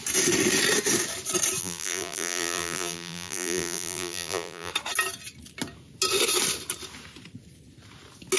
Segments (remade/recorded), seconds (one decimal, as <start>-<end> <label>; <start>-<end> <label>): 0.0-1.6 recorded; 1.6-4.7 remade; 4.7-8.4 recorded